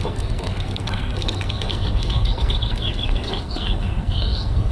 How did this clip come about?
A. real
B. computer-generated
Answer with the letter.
B